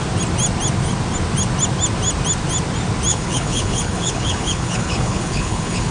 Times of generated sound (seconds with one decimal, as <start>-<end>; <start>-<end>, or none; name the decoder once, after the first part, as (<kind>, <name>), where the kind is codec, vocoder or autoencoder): 3.1-5.9 (codec, HILCodec)